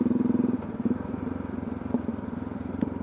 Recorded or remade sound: recorded